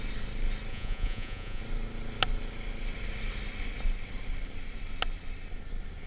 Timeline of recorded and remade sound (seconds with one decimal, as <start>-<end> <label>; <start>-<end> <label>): 0.0-0.7 recorded; 0.7-1.6 remade; 1.6-6.1 recorded